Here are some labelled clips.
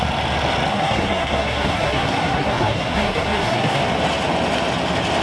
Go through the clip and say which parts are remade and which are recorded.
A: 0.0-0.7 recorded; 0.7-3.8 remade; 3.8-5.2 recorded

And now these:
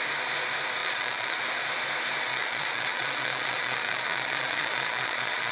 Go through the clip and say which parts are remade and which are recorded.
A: 0.0-0.8 recorded; 0.8-1.4 remade; 1.4-2.3 recorded; 2.3-5.5 remade

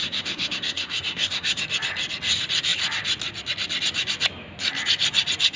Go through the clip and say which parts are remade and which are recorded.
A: 0.0-1.6 remade; 1.6-5.6 recorded